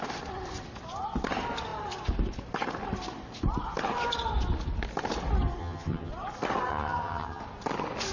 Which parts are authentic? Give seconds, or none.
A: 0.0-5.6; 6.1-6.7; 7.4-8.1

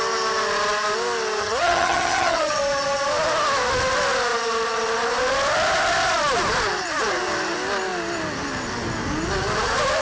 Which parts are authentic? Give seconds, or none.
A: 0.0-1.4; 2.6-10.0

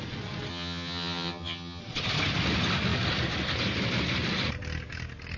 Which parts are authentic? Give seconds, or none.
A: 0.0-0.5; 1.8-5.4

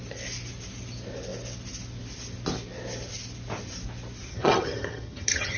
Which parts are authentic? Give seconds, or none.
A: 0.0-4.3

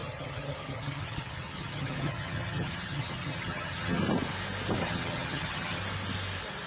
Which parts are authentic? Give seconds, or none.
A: 4.0-4.8; 5.8-6.7

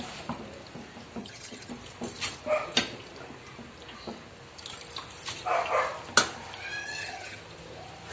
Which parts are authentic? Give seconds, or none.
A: 0.0-1.2; 1.7-6.8; 7.4-8.1